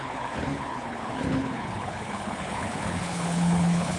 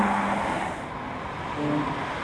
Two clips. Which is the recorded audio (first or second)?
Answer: second